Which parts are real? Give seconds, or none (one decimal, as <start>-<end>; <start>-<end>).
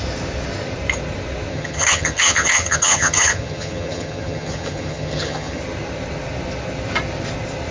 0.0-1.5; 5.6-7.7